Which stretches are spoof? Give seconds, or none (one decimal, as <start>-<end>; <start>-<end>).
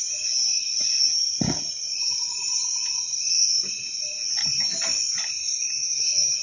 5.4-6.0